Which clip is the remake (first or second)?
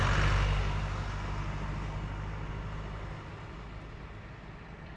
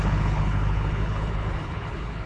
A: second